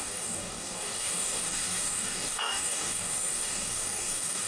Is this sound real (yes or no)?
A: no